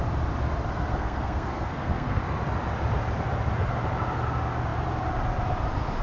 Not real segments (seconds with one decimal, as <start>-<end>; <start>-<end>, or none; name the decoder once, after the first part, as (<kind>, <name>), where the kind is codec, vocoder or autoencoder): 0.9-2.2 (codec, SNAC)